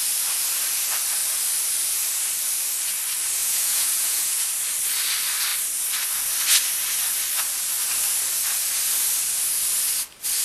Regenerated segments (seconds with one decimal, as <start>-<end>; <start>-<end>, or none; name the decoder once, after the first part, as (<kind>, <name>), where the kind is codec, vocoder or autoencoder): 3.4-4.5 (vocoder, Vocos)